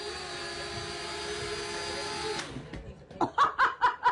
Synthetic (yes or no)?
no